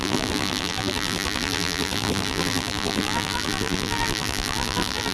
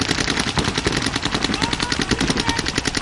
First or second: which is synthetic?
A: first